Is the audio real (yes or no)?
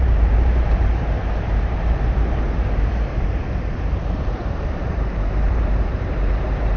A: no